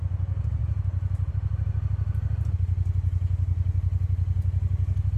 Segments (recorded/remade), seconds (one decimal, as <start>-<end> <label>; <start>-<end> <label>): 0.0-5.2 recorded